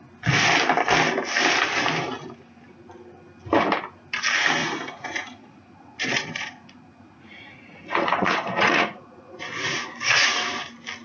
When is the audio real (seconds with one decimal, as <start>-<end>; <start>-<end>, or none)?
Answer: 0.0-4.6; 9.4-11.0